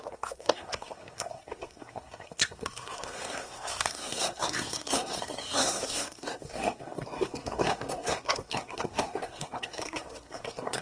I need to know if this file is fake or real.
fake